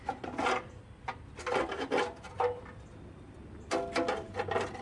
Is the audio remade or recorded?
recorded